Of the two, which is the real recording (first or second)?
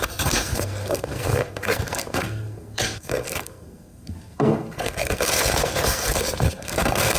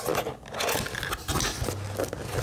second